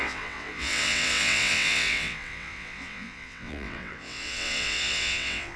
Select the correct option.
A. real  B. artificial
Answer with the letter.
B